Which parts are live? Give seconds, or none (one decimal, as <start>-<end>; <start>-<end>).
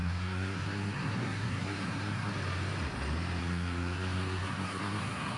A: 2.3-3.4